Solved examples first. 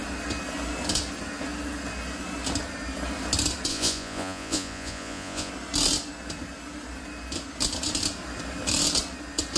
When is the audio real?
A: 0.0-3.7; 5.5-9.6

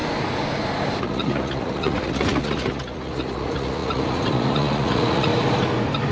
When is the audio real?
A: 0.0-1.0; 5.3-6.1

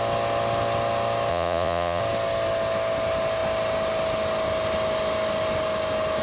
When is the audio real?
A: 0.0-1.3; 2.0-6.2